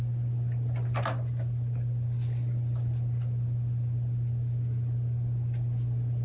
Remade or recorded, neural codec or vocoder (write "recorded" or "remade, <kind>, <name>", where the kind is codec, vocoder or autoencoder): recorded